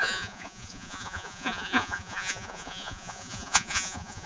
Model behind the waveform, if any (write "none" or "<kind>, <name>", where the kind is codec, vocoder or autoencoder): vocoder, Vocos